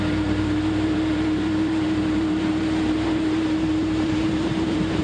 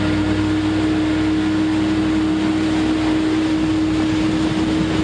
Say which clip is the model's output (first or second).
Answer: first